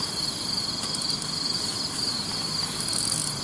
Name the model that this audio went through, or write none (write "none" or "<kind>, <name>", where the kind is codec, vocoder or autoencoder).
none